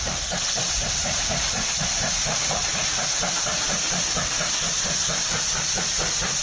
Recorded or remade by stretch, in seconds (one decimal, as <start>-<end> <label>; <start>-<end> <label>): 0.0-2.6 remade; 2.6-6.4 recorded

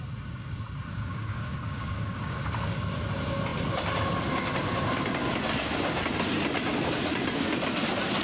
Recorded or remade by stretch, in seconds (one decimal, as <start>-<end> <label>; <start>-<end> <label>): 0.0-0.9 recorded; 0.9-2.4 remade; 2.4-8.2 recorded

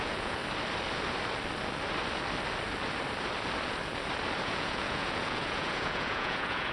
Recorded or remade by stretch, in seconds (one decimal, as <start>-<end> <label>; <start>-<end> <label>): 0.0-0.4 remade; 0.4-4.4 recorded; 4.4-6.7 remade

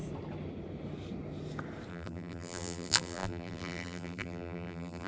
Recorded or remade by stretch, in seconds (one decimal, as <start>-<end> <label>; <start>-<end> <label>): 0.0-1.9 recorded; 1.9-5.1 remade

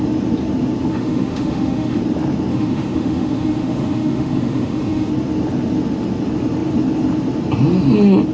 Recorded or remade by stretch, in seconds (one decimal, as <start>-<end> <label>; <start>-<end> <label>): 0.0-0.9 recorded; 0.9-2.0 remade; 2.0-2.5 recorded; 2.5-5.1 remade; 5.1-8.3 recorded